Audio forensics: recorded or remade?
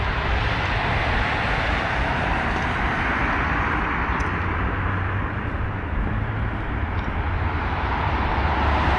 recorded